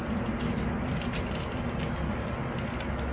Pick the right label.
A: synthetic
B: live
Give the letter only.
B